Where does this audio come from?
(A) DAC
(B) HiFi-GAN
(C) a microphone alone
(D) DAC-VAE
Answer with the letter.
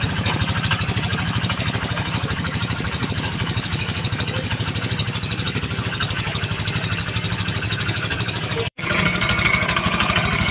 A